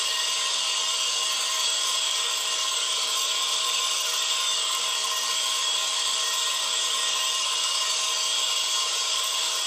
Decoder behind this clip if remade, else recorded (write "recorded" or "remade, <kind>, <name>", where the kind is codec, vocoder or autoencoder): remade, codec, DAC